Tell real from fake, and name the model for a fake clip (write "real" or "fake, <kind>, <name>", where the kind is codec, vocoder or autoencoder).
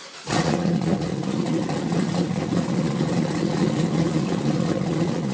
fake, vocoder, Vocos